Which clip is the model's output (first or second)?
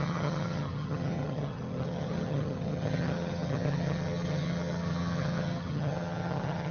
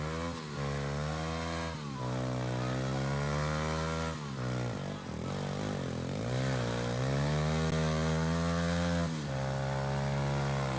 first